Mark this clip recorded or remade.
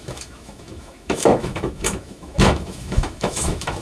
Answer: remade